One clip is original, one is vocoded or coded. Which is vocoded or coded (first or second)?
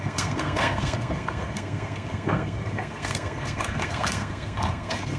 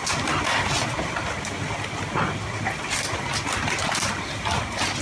first